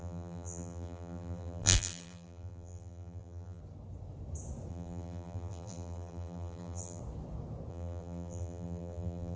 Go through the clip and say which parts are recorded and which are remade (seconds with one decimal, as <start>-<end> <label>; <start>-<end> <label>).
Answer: 0.0-3.6 remade; 3.6-4.7 recorded; 4.7-7.0 remade; 7.0-7.7 recorded; 7.7-9.4 remade